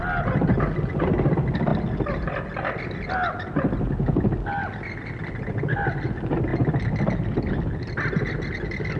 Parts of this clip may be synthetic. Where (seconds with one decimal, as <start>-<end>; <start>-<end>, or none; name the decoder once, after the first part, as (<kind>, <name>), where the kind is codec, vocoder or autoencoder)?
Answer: none